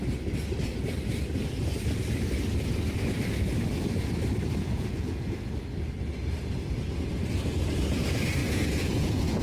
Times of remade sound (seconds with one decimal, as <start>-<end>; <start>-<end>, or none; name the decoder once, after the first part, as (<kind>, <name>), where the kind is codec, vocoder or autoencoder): 4.6-5.5 (vocoder, Vocos); 8.4-9.4